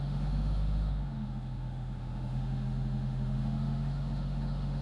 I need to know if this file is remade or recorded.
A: remade